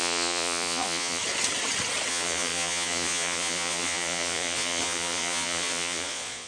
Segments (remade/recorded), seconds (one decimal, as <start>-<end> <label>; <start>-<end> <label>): 0.0-1.2 remade; 1.2-2.1 recorded; 2.1-6.5 remade